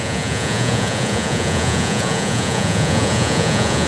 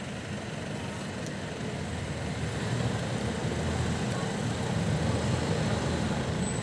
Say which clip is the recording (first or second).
second